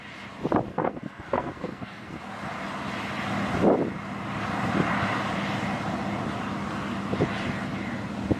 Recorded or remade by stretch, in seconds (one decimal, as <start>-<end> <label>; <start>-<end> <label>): 0.0-0.7 recorded; 0.7-2.2 remade; 2.2-8.4 recorded